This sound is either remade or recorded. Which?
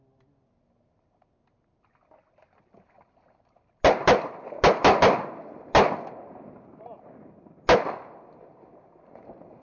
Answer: recorded